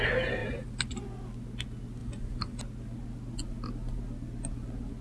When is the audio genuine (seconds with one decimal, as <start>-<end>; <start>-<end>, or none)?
0.0-0.4; 1.0-2.0; 2.6-5.0